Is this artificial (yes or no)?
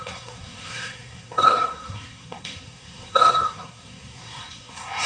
yes